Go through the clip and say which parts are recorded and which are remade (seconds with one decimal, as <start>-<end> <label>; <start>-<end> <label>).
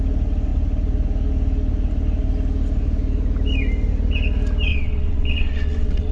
0.0-4.7 recorded; 4.7-6.1 remade